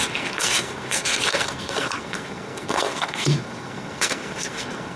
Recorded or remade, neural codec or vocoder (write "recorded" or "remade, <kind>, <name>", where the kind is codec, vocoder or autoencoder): remade, codec, SNAC